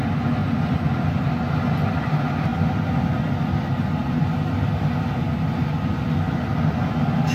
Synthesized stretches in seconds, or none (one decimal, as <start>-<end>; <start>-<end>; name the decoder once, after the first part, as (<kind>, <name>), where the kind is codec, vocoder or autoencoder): none